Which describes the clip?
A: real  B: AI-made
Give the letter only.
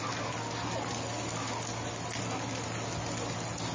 A